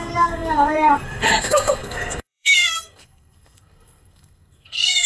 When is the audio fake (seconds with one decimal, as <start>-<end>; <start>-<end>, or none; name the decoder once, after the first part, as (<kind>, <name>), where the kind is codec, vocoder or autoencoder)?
0.0-5.1 (codec, SNAC)